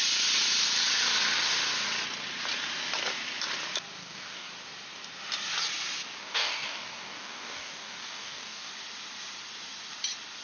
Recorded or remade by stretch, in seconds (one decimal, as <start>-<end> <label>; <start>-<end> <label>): 0.0-4.0 recorded; 4.0-4.5 remade; 4.5-6.2 recorded; 6.2-8.7 remade; 8.7-10.4 recorded